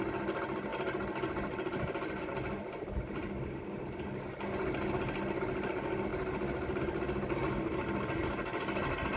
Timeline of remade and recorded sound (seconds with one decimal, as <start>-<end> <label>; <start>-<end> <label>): 0.0-9.2 recorded